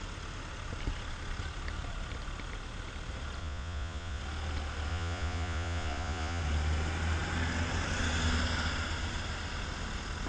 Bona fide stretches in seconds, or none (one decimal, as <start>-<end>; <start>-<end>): 0.0-3.4; 4.2-4.9; 6.4-10.3